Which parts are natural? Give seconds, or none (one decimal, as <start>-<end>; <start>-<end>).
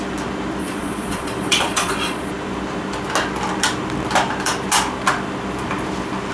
0.0-0.6; 2.3-6.3